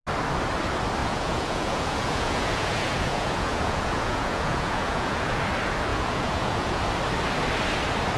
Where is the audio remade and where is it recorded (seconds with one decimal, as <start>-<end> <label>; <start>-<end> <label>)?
0.0-1.0 recorded; 1.0-5.4 remade; 5.4-5.9 recorded; 5.9-6.8 remade; 6.8-8.2 recorded